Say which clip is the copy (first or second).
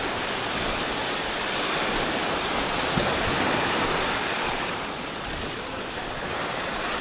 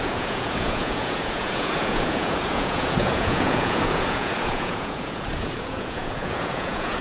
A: second